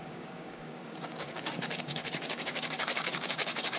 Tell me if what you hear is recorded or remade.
remade